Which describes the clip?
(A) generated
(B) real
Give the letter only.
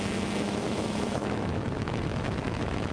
A